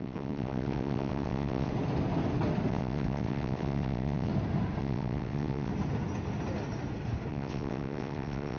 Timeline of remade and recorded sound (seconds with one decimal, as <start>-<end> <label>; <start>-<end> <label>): 0.0-1.7 remade; 1.7-2.7 recorded; 2.7-4.3 remade; 4.3-4.8 recorded; 4.8-5.7 remade; 5.7-7.3 recorded; 7.3-8.6 remade